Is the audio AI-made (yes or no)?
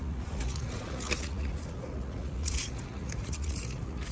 yes